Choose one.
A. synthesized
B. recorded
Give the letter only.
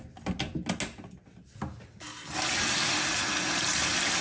B